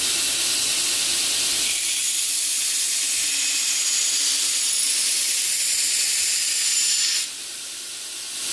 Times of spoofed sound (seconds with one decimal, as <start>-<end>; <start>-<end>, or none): none